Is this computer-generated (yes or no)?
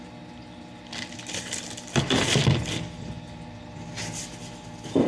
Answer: no